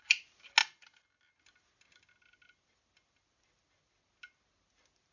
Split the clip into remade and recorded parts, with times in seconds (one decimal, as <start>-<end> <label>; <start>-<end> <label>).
0.0-5.1 recorded